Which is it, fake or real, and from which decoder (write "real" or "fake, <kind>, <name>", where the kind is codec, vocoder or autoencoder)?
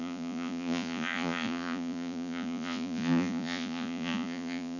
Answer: fake, vocoder, Vocos